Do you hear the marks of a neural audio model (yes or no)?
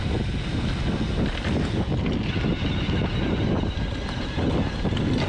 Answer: no